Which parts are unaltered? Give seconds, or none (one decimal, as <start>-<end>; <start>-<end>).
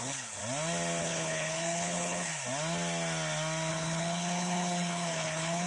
0.4-1.0; 2.3-3.7